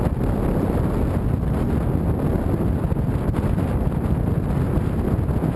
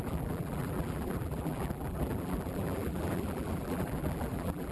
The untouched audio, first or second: first